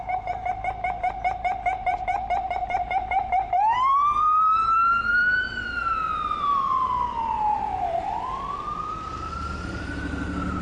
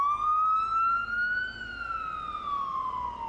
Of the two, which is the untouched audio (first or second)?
second